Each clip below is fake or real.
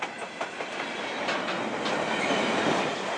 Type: real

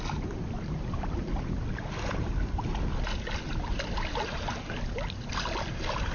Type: real